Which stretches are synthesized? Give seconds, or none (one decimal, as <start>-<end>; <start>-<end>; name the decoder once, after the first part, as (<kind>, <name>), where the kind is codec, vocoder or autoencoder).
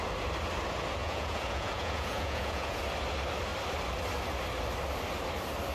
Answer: 1.0-2.8 (vocoder, Vocos)